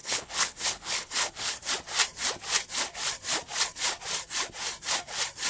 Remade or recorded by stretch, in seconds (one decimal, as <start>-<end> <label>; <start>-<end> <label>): 0.0-1.7 remade; 1.7-5.5 recorded